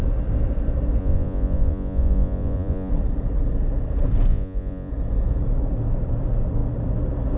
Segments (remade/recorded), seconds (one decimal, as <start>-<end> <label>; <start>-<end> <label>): 0.0-1.0 recorded; 1.0-2.9 remade; 2.9-4.3 recorded; 4.3-4.9 remade; 4.9-7.4 recorded